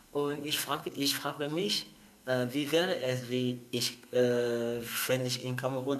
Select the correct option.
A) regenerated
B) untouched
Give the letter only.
A